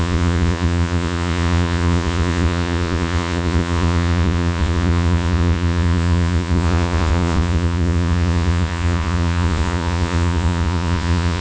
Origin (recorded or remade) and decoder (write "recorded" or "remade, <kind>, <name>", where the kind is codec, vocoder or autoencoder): remade, vocoder, Vocos